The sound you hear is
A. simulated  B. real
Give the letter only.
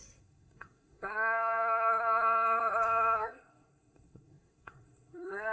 A